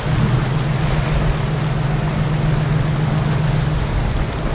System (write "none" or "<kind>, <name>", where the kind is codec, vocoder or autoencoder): none